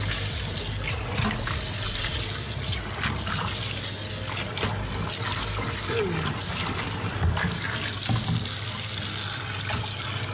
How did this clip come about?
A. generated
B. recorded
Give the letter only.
B